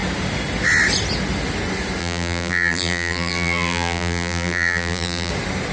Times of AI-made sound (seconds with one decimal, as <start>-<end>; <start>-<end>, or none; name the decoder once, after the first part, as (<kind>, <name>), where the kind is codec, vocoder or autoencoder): 2.0-5.3 (vocoder, BigVGAN v2)